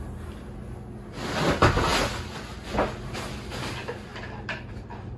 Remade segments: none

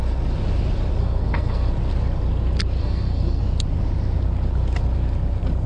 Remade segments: 1.0-1.7; 2.8-3.4

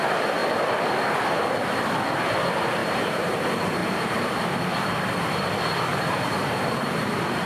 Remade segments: 2.8-3.4; 3.8-5.5; 5.9-7.5

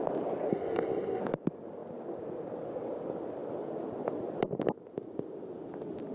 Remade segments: 0.5-1.2